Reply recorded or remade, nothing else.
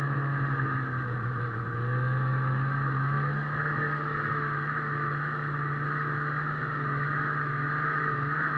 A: remade